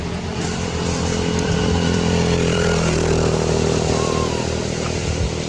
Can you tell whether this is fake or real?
fake